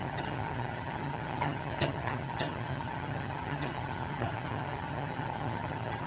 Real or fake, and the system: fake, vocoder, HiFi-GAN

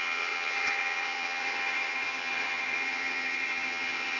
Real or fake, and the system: fake, vocoder, HiFi-GAN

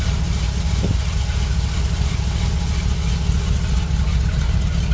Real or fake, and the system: real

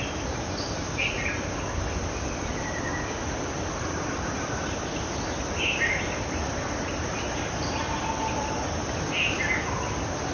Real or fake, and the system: real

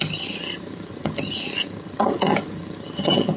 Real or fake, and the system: fake, vocoder, HiFi-GAN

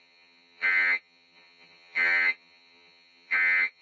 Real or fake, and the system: fake, vocoder, HiFi-GAN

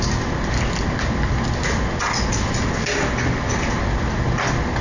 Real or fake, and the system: real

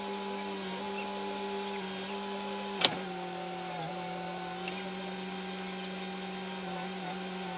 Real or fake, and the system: real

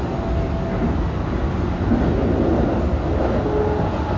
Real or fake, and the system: real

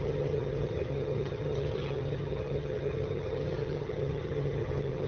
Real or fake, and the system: fake, vocoder, HiFi-GAN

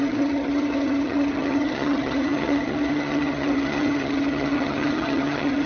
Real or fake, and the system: fake, vocoder, HiFi-GAN